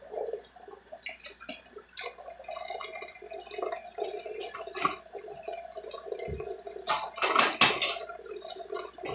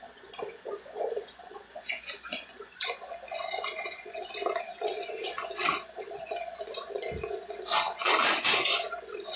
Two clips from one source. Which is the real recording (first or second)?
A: first